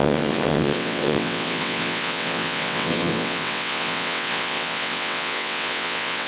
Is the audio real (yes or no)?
no